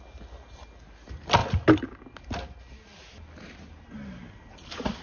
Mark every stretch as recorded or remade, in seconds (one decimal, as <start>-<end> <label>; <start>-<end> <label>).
0.0-5.0 recorded